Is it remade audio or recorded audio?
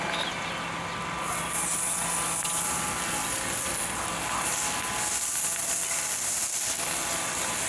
recorded